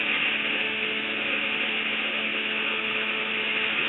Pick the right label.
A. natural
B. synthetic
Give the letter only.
B